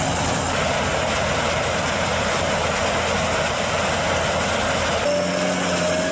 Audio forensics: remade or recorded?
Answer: recorded